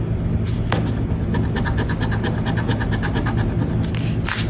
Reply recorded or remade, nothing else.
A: recorded